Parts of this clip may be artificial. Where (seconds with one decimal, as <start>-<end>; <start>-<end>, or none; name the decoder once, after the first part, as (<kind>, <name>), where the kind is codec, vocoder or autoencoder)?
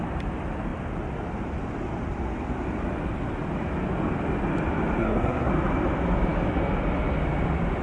5.0-5.5 (codec, SNAC)